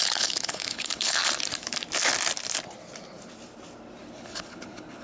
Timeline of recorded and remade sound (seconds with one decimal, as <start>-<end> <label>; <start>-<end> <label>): 0.0-1.2 remade; 1.2-4.1 recorded; 4.1-5.0 remade